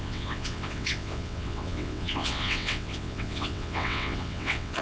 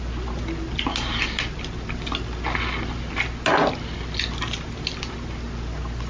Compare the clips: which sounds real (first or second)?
second